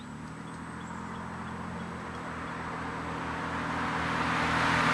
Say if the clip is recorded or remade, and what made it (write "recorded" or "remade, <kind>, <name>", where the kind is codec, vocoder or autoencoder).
recorded